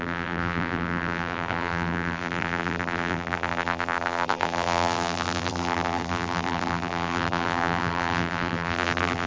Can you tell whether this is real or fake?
fake